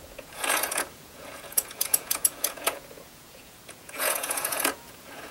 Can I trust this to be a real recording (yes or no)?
no